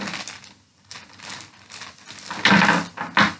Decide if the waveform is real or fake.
real